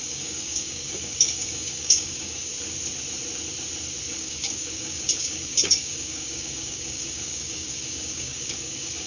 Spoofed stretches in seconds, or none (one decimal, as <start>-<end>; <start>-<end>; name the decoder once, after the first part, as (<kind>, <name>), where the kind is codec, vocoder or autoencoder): 0.0-2.5 (codec, DAC); 4.1-9.1